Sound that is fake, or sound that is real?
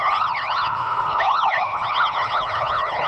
fake